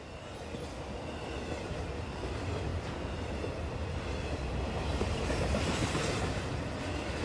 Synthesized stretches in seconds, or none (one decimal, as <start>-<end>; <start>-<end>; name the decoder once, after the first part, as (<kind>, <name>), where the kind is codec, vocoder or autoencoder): 2.7-3.3 (vocoder, BigVGAN v2); 4.9-6.5